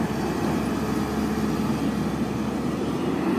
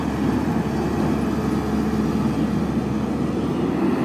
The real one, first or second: second